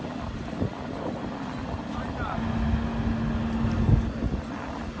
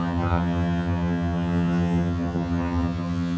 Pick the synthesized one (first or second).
second